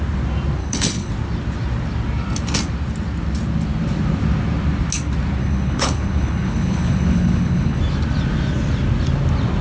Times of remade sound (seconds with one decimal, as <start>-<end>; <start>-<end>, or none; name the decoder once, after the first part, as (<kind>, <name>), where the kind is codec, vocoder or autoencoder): 0.6-1.1 (codec, HILCodec); 5.4-7.8